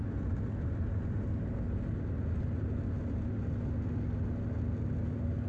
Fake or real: real